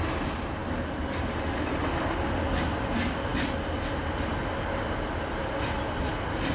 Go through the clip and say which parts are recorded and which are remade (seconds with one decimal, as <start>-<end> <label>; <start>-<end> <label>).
0.0-6.5 recorded